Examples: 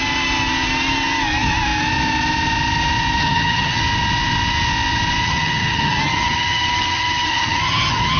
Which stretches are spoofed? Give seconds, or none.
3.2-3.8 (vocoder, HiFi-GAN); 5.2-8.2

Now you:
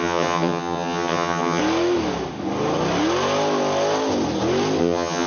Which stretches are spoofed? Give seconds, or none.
0.0-1.6 (vocoder, HiFi-GAN); 4.8-5.3